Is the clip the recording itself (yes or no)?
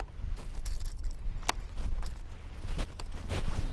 yes